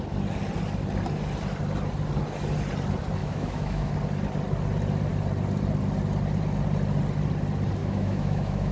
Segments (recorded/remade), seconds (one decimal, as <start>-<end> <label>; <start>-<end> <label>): 0.0-3.2 recorded; 3.2-3.9 remade; 3.9-7.8 recorded; 7.8-8.7 remade